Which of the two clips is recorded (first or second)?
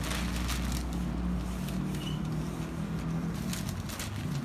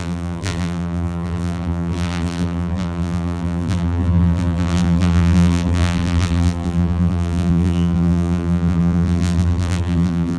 first